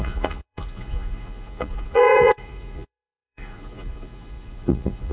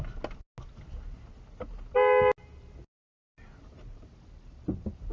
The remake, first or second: first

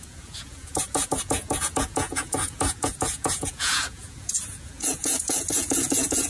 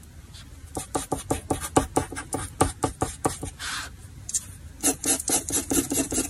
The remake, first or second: first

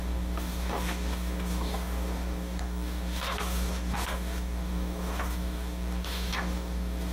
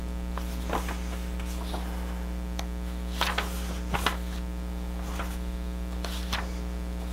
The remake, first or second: first